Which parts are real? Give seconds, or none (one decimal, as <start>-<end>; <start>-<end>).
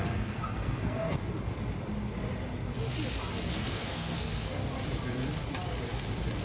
1.2-3.5; 4.6-6.4